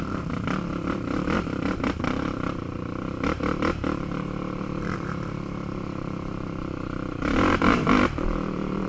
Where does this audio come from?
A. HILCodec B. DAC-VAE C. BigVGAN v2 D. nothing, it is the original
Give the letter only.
C